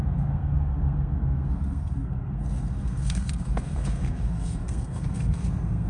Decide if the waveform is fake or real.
fake